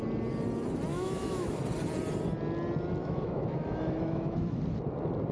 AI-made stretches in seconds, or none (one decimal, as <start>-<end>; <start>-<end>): 0.9-1.6; 3.0-4.6